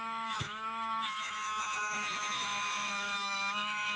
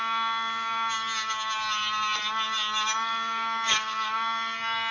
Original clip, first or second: second